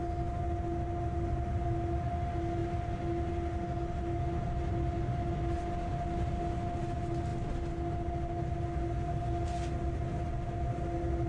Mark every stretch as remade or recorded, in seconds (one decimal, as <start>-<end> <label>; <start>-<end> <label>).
0.0-11.3 recorded

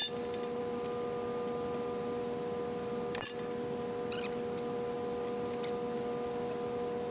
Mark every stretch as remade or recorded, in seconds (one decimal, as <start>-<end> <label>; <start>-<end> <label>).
0.0-7.1 recorded

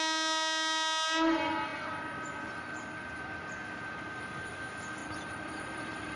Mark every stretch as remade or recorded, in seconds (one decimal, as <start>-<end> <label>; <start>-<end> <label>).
0.0-5.0 recorded; 5.0-6.2 remade

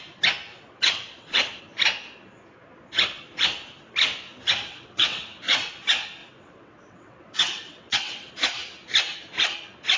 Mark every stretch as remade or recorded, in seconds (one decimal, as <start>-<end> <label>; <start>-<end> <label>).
0.0-0.5 recorded; 0.5-1.6 remade; 1.6-4.7 recorded; 4.7-5.7 remade; 5.7-6.2 recorded; 6.2-8.3 remade; 8.3-10.0 recorded

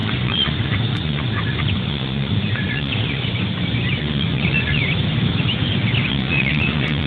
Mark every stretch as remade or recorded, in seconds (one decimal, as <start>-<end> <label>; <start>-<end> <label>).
0.0-3.2 remade; 3.2-4.0 recorded; 4.0-4.8 remade; 4.8-6.1 recorded; 6.1-7.1 remade